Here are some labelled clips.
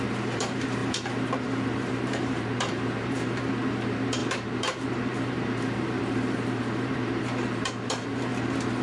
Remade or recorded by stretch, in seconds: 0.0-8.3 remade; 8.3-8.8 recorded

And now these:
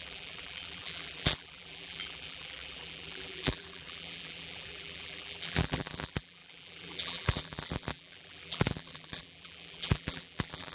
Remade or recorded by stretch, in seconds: 0.0-10.7 remade

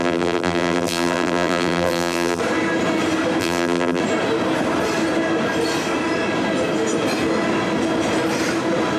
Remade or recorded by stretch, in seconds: 0.0-2.4 remade; 2.4-3.4 recorded; 3.4-4.0 remade; 4.0-9.0 recorded

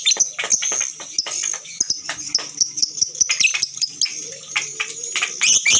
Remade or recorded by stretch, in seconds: 0.0-5.8 recorded